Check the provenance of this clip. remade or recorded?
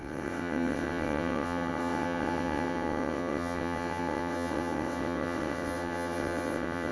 remade